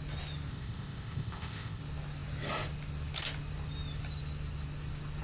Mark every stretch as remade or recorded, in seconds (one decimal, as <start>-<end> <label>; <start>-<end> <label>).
0.0-0.5 recorded; 0.5-1.8 remade; 1.8-5.2 recorded